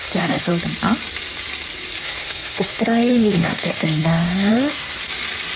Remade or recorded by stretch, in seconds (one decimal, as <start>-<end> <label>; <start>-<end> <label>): 0.0-0.5 remade; 0.5-2.0 recorded; 2.0-5.0 remade; 5.0-5.6 recorded